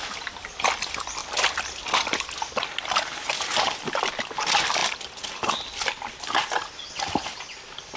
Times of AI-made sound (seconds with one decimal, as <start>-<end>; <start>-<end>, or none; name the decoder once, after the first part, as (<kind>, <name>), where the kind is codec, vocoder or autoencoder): none

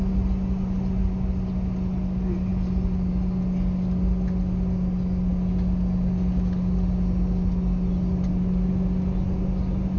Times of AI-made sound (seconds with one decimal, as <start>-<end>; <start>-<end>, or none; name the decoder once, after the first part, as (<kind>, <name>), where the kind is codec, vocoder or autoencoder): none

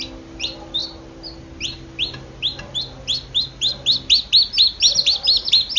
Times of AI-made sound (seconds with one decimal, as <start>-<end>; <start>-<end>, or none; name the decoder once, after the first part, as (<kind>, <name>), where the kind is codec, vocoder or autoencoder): none

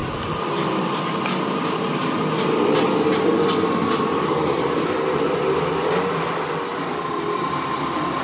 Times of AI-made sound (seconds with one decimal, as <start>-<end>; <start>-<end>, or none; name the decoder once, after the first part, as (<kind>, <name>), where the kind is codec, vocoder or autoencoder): none